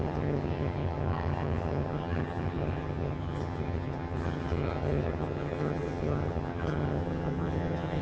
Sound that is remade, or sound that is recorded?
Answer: remade